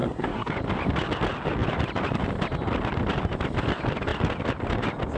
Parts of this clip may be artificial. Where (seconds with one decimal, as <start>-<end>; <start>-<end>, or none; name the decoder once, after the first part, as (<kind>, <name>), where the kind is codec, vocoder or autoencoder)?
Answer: 0.0-0.5 (codec, SNAC)